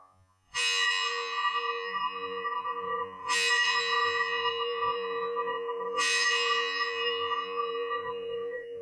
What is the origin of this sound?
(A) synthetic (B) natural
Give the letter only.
A